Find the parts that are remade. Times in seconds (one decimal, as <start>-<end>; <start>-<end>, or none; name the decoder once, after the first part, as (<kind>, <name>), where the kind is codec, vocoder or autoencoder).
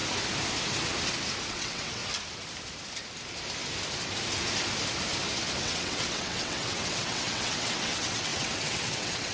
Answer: 1.5-2.0 (vocoder, WaveNeXt); 5.6-9.3